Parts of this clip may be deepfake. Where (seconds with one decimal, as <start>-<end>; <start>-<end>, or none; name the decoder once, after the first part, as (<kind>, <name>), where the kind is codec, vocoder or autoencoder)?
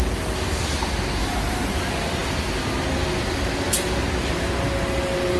1.2-1.8 (vocoder, BigVGAN v2)